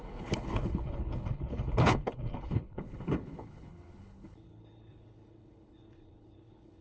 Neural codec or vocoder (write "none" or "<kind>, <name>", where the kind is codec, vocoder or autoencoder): codec, HILCodec